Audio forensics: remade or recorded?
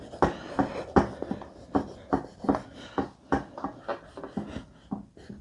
recorded